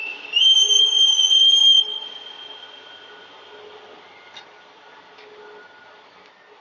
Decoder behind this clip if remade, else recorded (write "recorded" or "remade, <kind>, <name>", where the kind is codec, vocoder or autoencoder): recorded